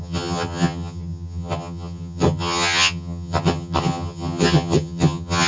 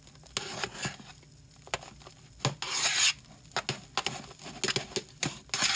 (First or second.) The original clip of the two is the second